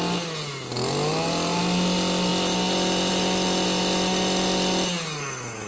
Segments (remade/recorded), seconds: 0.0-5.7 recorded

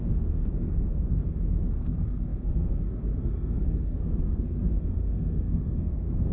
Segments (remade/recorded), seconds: 0.0-1.2 remade; 1.2-1.7 recorded; 1.7-6.3 remade